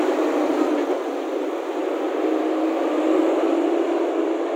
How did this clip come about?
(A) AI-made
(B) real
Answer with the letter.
B